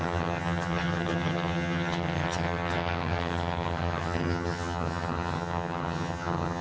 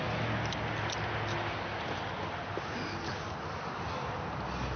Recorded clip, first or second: second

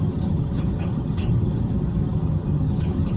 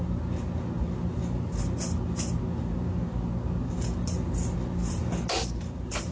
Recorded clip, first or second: second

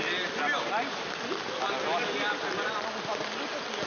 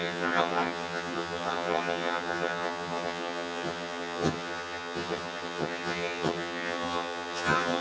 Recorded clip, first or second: first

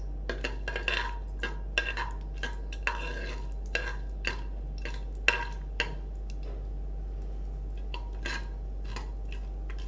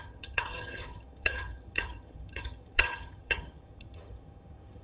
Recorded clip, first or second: first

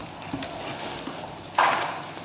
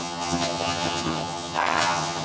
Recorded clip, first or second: first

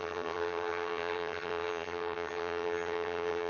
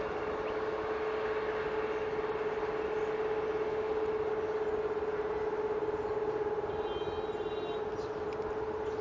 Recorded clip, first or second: second